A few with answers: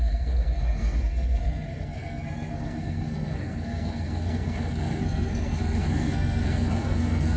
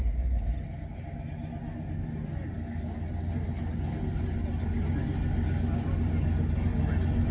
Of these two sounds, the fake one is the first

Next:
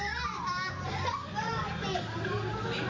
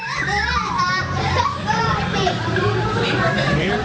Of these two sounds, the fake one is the second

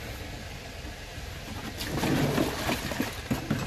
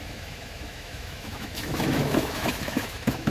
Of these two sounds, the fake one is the second